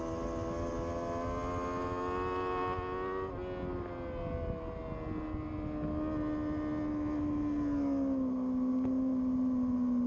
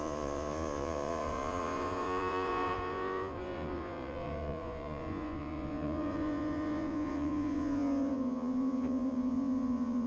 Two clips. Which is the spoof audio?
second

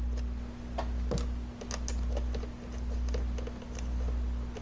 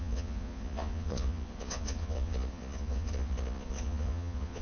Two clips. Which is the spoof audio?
second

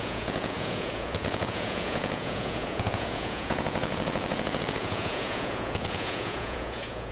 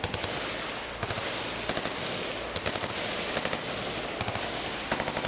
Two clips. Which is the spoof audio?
first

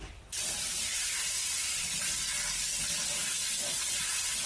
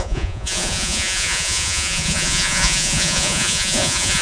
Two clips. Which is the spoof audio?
second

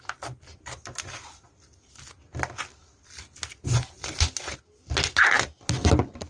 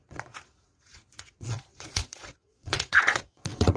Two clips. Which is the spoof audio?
second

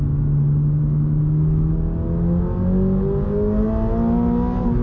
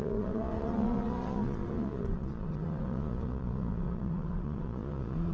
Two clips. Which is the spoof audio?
second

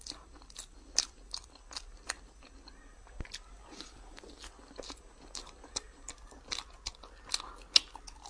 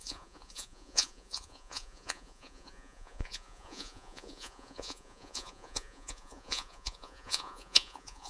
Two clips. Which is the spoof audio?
second